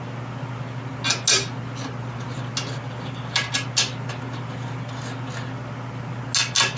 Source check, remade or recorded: recorded